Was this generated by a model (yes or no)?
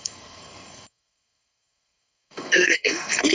yes